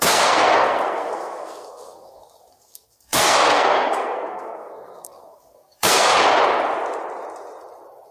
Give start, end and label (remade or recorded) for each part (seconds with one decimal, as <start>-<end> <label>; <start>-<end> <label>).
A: 0.0-6.1 remade; 6.1-8.1 recorded